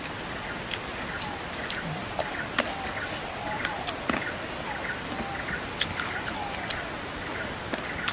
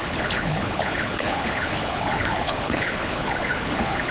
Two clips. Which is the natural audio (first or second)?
first